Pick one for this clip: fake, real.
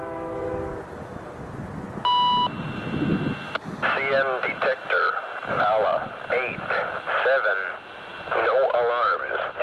real